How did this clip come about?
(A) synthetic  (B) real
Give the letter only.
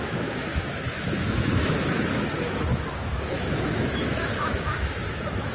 A